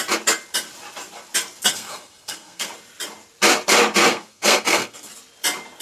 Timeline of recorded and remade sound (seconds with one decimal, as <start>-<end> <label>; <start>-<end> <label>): 0.0-1.7 recorded; 1.7-2.7 remade; 2.7-4.1 recorded; 4.1-5.1 remade; 5.1-5.8 recorded